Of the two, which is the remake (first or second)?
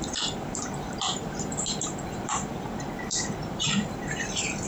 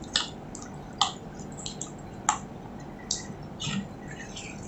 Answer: first